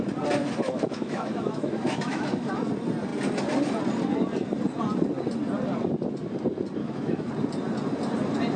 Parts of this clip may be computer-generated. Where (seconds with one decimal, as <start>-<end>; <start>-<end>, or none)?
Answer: 0.4-2.5; 6.8-7.3